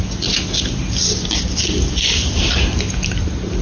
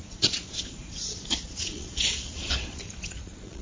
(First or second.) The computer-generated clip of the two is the second